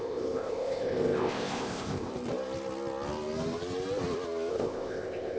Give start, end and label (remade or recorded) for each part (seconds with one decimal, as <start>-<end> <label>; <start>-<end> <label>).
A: 0.0-2.1 remade; 2.1-4.5 recorded; 4.5-5.4 remade